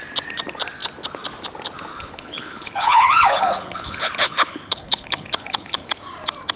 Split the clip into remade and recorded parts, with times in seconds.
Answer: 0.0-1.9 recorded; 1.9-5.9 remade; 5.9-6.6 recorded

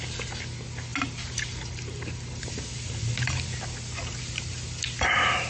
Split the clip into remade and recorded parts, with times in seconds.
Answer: 0.0-5.5 recorded

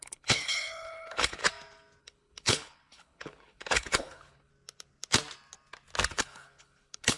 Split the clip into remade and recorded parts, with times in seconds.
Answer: 0.0-1.4 remade; 1.4-2.0 recorded; 2.0-4.5 remade; 4.5-6.1 recorded; 6.1-7.2 remade

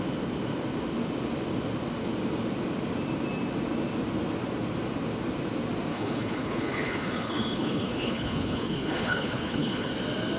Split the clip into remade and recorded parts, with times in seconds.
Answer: 0.0-5.9 recorded; 5.9-9.9 remade; 9.9-10.4 recorded